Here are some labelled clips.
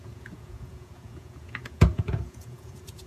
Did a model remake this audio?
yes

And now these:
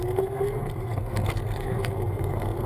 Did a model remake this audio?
yes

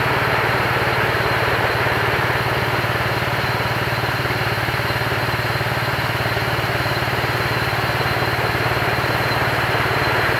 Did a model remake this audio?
yes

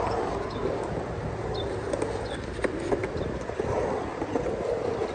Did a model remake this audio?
no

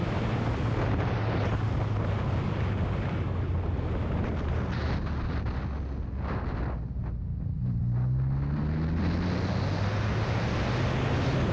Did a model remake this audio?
no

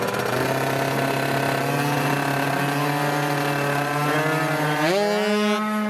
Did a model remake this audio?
no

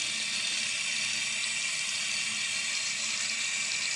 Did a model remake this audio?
no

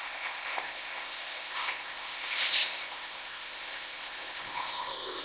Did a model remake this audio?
yes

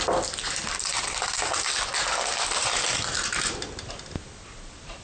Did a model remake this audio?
no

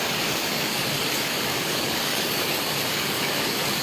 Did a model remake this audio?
yes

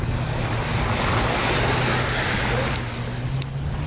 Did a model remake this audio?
no